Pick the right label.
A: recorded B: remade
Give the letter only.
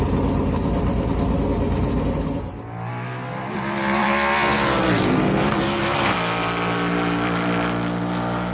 A